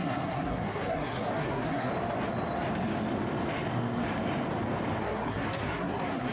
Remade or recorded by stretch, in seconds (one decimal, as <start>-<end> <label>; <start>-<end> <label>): 0.0-1.9 remade; 1.9-5.0 recorded; 5.0-6.3 remade